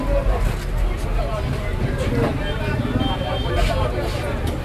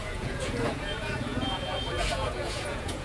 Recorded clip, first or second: first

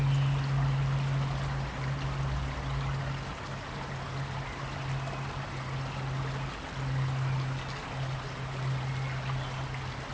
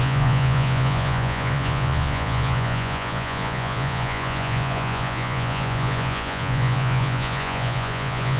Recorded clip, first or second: first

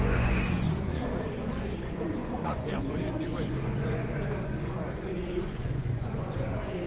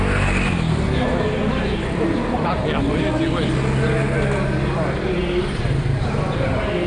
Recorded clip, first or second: second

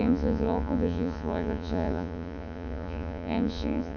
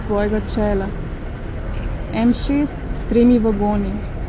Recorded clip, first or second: second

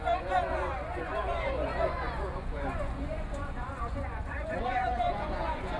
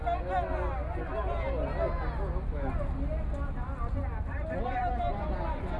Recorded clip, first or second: second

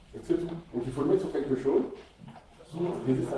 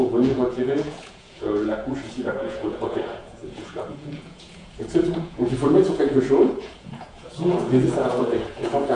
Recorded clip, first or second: first